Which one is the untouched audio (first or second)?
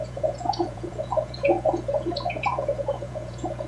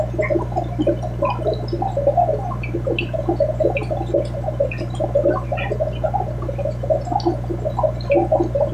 second